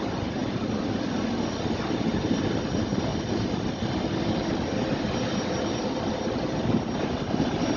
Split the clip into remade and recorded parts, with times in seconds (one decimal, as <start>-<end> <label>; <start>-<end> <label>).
0.0-7.8 recorded